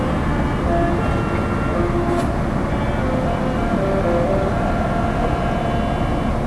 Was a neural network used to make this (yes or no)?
no